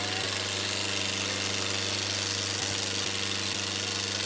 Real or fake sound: real